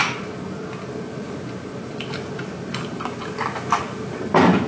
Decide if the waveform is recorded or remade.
recorded